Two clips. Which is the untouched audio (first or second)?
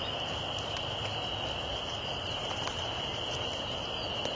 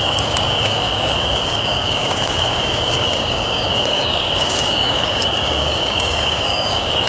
first